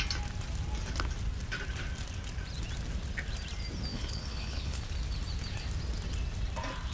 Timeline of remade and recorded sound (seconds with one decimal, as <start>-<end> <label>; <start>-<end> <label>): 0.0-3.9 recorded; 3.9-4.8 remade; 4.8-6.9 recorded